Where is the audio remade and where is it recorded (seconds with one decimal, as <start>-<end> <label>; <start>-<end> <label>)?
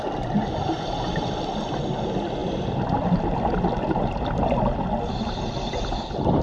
0.0-6.4 recorded